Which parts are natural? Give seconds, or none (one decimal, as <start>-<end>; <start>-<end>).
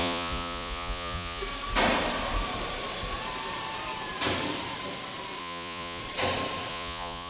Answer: 1.4-5.4; 6.0-6.7